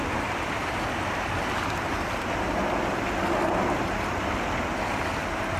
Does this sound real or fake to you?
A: real